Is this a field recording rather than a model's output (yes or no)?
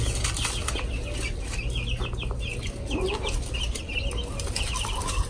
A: yes